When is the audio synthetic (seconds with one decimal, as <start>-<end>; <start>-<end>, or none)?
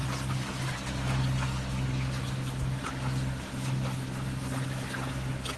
none